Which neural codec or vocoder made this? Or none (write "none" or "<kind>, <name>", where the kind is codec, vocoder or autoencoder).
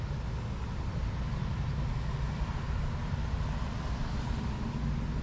none